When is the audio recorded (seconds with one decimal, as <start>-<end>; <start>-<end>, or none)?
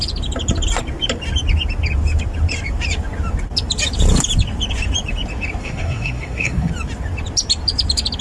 0.0-5.6; 6.7-8.2